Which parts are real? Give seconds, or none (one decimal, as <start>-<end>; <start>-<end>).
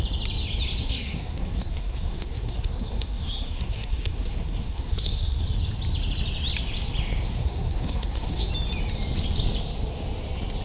0.0-0.8; 5.4-7.3; 8.5-10.6